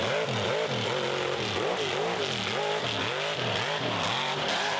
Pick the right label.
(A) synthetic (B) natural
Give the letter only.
B